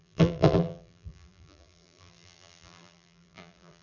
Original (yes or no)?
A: no